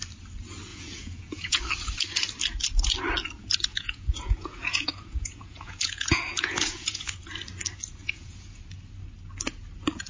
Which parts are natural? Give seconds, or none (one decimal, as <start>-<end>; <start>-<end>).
0.0-0.7; 1.6-3.7; 7.3-8.0; 8.6-10.1